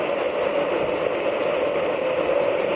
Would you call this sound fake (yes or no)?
no